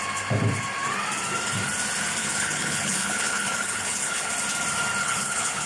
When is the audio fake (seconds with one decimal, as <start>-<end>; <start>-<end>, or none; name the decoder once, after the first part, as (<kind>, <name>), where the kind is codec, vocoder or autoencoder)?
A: 2.2-4.3 (codec, HILCodec); 5.0-5.7